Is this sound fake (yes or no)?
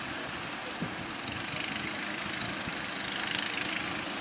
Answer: no